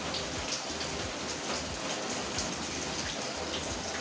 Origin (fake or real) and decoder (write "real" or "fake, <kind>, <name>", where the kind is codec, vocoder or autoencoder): real